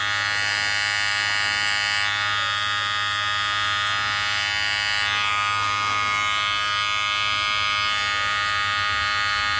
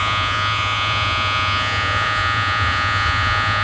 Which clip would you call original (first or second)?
first